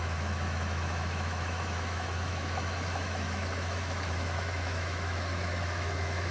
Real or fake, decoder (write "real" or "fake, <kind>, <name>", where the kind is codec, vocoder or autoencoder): fake, autoencoder, DAC-VAE